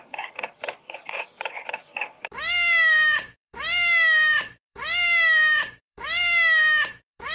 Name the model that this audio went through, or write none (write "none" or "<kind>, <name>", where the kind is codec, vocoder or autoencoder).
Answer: codec, DAC